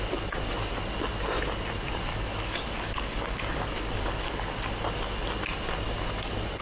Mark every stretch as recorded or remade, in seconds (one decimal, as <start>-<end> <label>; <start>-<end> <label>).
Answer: 0.0-2.1 recorded; 2.1-4.5 remade; 4.5-6.6 recorded